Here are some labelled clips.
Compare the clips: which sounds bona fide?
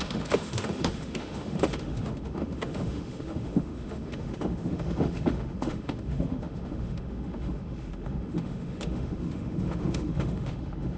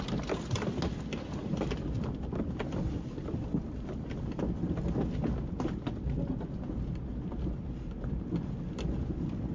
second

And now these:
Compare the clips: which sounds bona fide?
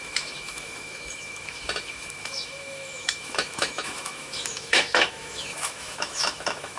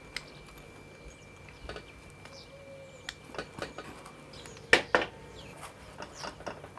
second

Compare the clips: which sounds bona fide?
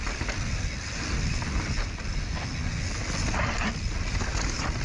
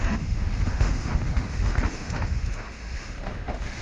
first